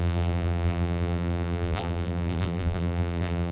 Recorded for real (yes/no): no